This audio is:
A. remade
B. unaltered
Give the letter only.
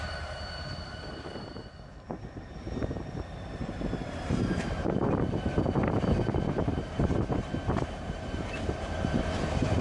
A